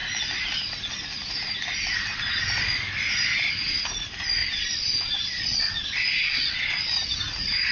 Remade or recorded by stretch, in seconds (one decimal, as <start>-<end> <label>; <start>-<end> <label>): 0.0-4.4 recorded; 4.4-6.9 remade; 6.9-7.7 recorded